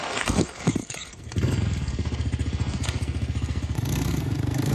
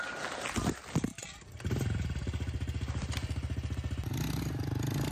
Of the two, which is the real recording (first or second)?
second